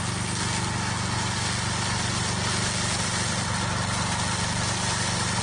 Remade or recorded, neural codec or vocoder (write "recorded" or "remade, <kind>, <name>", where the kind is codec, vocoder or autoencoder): recorded